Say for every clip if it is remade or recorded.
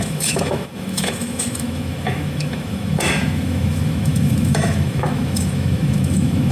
remade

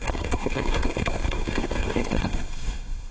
remade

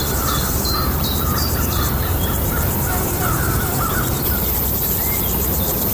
remade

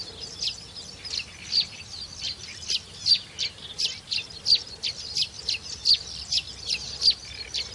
recorded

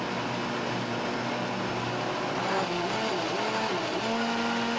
recorded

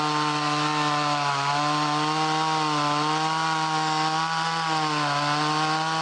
recorded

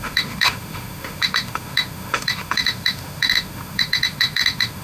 remade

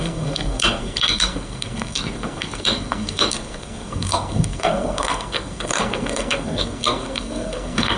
remade